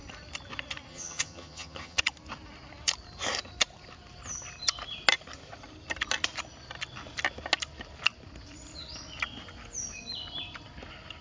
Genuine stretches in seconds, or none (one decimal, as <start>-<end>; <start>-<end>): 0.0-0.9; 2.0-11.2